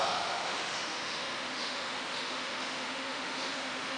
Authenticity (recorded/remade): remade